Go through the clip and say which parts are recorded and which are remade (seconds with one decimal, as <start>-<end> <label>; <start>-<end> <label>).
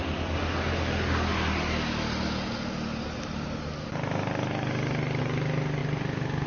0.0-6.5 recorded